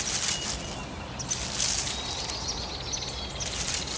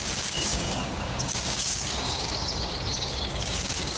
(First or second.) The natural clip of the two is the first